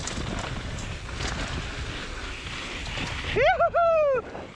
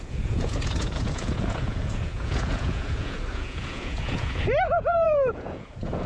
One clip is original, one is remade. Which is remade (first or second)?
second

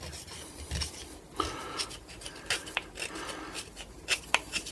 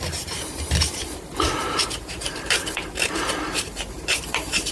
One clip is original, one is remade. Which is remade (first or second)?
second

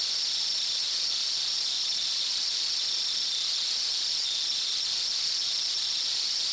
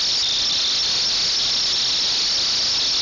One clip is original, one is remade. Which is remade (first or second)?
first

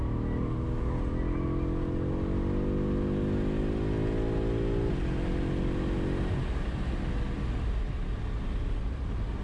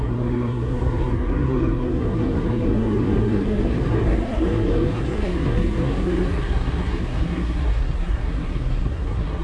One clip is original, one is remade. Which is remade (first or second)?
second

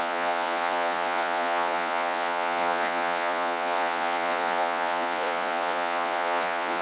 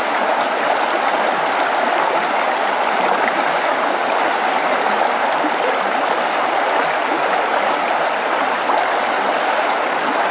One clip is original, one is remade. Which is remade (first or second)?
first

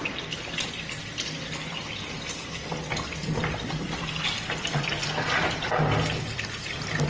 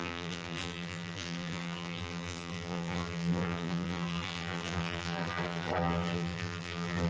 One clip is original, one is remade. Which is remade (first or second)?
second